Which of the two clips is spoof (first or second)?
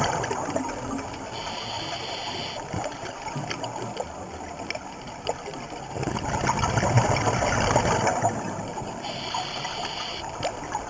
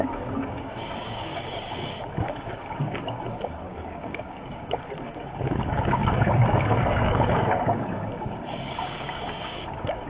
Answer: second